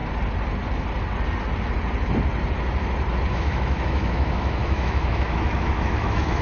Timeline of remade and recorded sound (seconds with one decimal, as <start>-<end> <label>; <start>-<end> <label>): 0.0-3.3 recorded; 3.3-6.4 remade